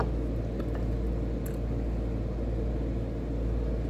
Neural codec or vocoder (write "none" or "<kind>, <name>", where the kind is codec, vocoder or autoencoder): none